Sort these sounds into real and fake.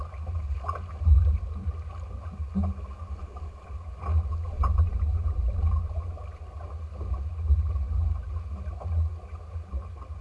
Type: real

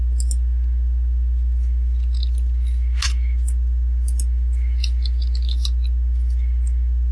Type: real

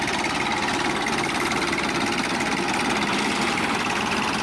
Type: real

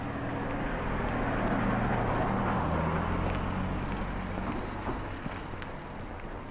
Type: real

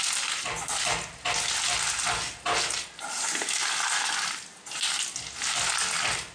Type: real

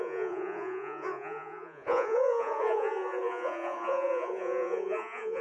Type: fake